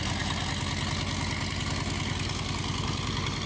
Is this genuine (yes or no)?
yes